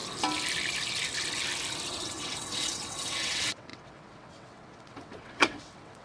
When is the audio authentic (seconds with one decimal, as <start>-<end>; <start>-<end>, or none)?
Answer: 0.0-1.9